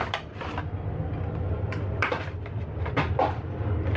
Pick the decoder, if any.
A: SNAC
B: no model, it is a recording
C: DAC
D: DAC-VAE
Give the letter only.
B